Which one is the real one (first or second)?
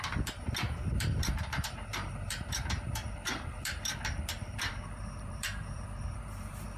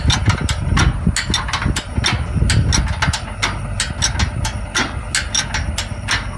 second